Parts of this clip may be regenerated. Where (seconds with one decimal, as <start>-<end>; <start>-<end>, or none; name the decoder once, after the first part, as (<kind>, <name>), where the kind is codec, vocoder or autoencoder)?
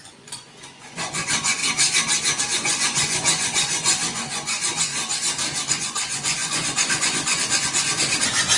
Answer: 0.0-1.6 (vocoder, Vocos); 2.4-4.9; 5.7-8.6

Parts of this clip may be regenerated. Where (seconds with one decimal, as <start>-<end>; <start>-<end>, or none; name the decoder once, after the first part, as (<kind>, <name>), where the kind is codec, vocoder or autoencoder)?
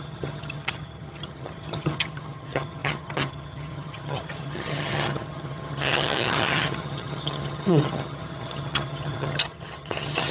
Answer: 0.0-10.3 (vocoder, HiFi-GAN)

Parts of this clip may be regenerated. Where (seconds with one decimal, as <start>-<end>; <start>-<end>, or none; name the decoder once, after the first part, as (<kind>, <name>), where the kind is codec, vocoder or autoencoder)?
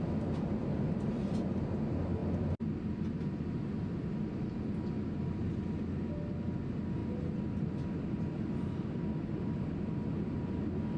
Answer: none